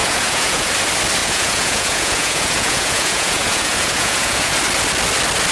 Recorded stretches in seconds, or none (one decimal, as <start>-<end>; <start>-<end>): 0.7-1.2; 4.5-5.5